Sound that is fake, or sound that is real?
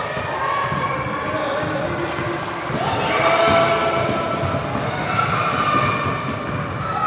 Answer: real